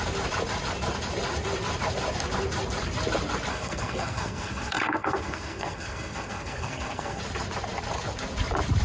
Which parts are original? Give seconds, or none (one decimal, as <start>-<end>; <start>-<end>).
0.0-3.5; 7.2-8.8

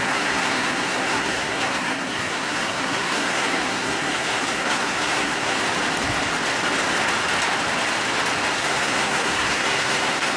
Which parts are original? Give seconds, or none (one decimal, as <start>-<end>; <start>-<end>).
5.6-8.5

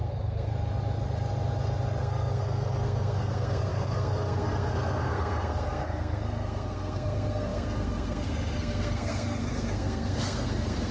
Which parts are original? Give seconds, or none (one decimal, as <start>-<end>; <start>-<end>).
0.5-2.0